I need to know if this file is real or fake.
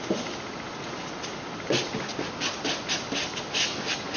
real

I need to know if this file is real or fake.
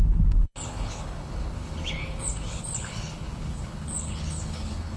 fake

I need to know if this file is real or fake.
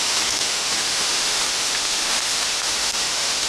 fake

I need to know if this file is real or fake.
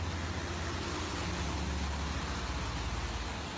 real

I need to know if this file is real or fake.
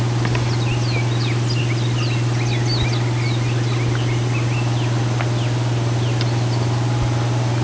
real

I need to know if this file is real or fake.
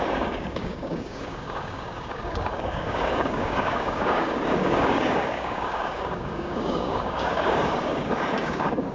fake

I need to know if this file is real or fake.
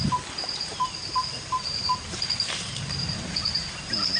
fake